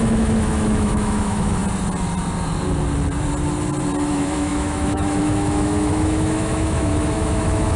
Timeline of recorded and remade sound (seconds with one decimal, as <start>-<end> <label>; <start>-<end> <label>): 0.0-1.6 remade; 1.6-4.1 recorded; 4.1-7.8 remade